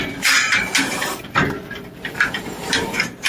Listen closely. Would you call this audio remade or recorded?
remade